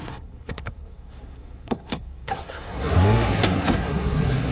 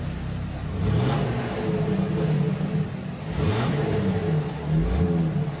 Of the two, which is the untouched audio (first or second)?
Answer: second